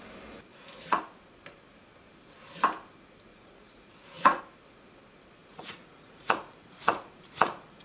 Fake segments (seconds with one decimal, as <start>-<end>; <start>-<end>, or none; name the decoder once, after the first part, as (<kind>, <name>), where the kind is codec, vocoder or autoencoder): 0.5-1.0 (vocoder, Vocos); 3.3-4.4; 5.4-7.8